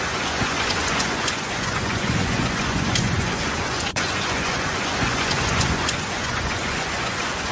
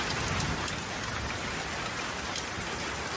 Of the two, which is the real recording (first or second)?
second